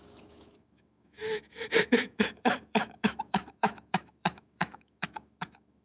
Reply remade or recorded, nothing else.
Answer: remade